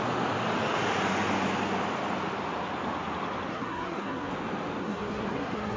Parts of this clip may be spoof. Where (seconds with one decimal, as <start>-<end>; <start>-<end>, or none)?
3.5-4.3; 4.8-5.8